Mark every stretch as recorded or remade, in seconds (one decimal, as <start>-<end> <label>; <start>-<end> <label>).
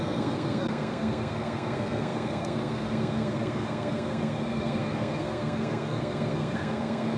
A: 0.0-7.2 remade